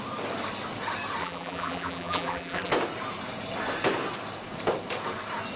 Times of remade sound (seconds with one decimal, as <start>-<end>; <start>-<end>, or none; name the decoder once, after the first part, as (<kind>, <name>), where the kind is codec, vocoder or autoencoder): 1.2-2.7 (vocoder, BigVGAN v2)